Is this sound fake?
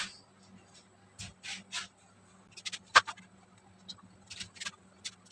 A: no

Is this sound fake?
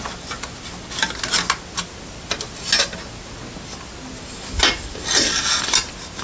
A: no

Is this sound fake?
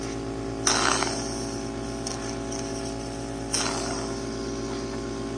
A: no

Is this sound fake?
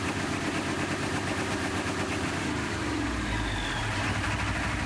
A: no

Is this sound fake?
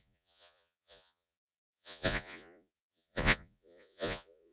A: yes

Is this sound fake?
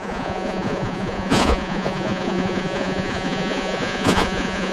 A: yes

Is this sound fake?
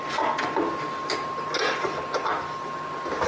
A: no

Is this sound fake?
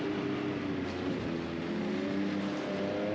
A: no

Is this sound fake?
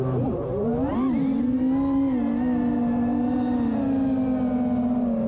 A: no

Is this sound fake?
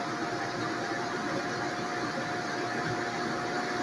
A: no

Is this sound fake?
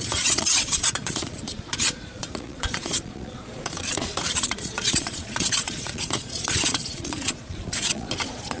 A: yes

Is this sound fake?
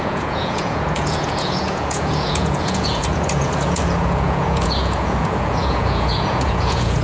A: yes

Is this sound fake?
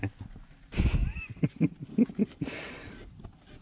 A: no